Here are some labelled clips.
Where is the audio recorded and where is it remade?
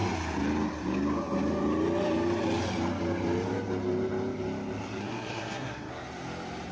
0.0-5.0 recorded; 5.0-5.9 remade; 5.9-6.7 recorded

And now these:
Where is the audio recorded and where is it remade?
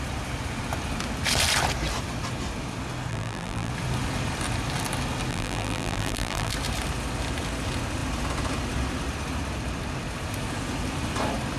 0.0-3.1 recorded; 3.1-3.7 remade; 3.7-5.3 recorded; 5.3-6.5 remade; 6.5-11.6 recorded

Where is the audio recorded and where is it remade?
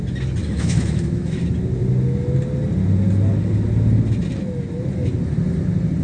0.0-0.4 recorded; 0.4-1.4 remade; 1.4-6.0 recorded